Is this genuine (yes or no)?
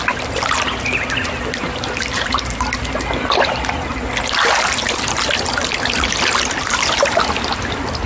yes